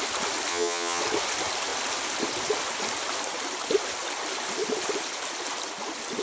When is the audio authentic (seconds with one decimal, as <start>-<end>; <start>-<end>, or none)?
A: 0.0-0.5; 1.0-6.2